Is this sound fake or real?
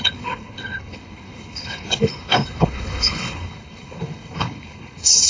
fake